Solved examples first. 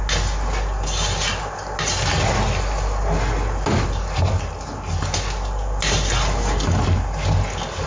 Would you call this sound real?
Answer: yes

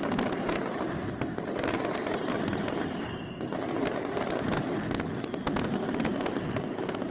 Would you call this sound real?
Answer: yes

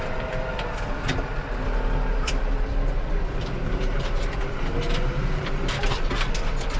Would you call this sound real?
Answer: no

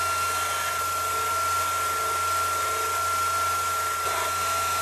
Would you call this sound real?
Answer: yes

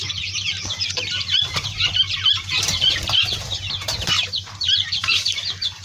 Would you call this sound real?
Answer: no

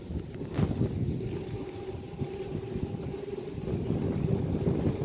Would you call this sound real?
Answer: yes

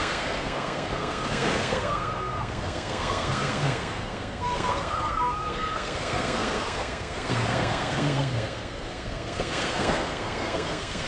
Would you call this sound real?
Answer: no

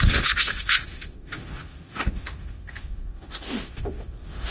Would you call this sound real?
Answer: no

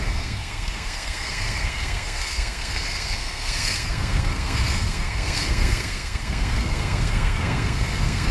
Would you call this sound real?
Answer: no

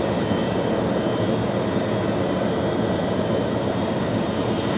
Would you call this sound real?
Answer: yes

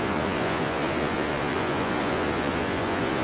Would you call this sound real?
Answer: no